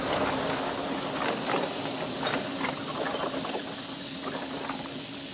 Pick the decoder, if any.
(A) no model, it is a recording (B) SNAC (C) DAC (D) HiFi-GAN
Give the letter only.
A